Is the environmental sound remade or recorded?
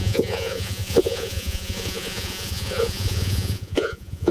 remade